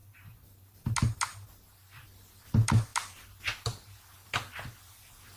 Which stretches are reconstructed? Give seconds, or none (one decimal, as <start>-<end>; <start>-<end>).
2.4-2.9; 4.1-5.4